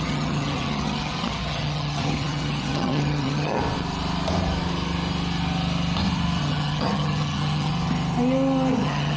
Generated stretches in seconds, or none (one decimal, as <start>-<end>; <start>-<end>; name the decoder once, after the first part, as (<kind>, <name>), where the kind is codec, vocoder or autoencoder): 0.0-3.6 (vocoder, HiFi-GAN); 6.4-7.7; 8.7-9.2